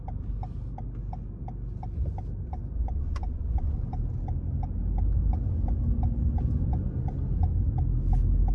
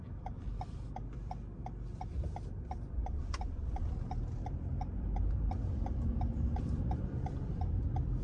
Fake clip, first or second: second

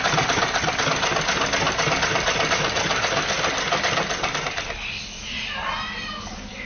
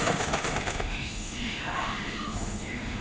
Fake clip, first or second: second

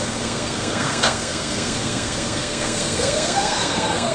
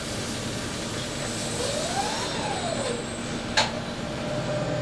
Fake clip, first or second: first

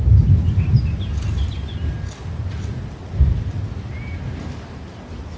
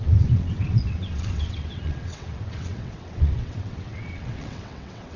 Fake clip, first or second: second